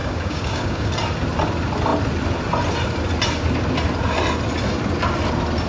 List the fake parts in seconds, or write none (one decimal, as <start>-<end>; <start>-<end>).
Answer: 0.0-0.9